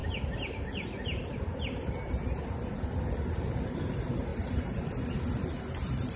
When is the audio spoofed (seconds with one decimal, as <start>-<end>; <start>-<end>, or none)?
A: none